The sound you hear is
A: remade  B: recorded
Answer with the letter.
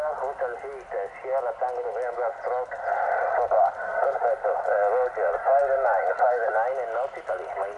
B